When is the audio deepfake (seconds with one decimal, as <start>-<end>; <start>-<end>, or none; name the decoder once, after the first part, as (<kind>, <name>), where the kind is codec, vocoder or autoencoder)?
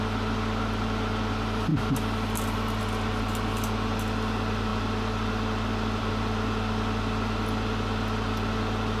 none